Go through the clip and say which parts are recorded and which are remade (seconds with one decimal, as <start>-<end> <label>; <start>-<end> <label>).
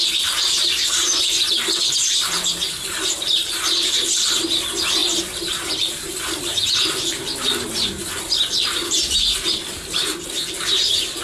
0.0-11.2 remade